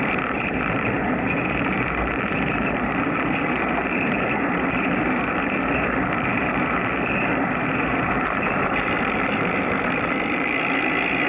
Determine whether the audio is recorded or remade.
remade